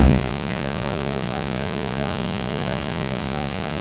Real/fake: fake